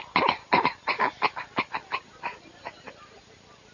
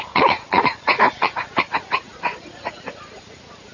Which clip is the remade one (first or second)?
second